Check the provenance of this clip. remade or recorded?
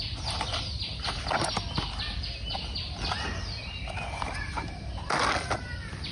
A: recorded